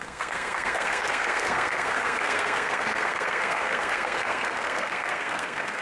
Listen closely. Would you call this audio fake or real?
fake